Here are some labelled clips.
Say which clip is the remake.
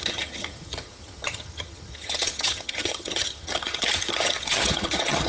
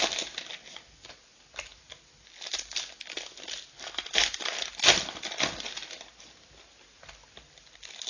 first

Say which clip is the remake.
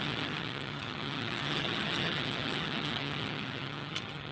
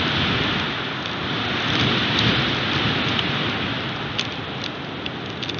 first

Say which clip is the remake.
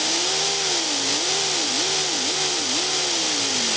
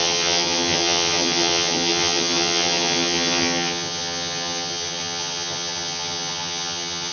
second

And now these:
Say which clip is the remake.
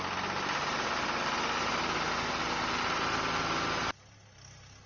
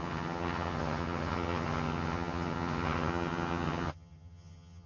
second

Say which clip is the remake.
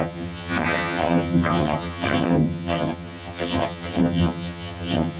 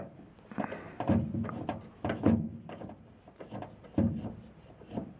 first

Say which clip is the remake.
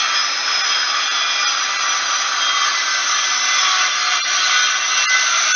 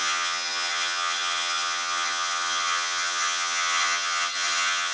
second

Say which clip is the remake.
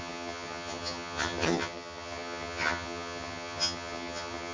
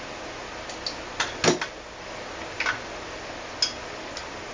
first